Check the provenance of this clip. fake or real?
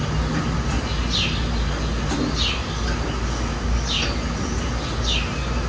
real